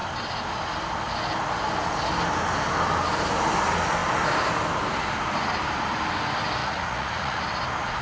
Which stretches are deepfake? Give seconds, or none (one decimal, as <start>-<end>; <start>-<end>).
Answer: 6.6-7.4